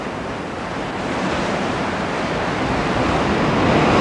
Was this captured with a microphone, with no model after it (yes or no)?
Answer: yes